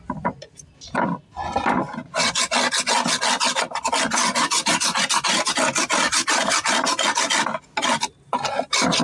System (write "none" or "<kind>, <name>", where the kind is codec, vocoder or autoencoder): none